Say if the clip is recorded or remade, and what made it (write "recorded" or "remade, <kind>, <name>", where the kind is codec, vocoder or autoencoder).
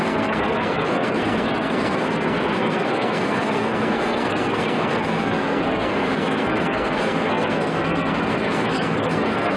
remade, codec, SNAC